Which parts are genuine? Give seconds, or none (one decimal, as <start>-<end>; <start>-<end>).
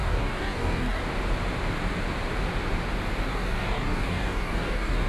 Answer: 1.0-3.3